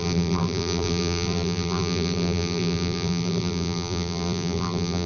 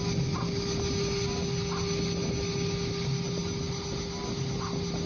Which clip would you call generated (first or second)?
first